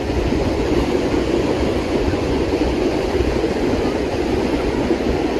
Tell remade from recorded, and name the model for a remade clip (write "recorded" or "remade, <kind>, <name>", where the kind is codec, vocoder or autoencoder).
remade, vocoder, Vocos